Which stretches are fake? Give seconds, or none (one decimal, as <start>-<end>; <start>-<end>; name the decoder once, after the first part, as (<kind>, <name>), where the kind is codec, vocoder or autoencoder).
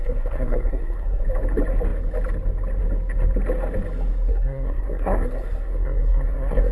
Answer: 0.0-1.2 (codec, SNAC); 4.3-6.7